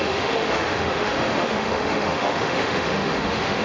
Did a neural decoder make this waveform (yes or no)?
yes